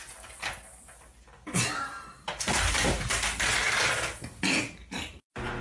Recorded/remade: recorded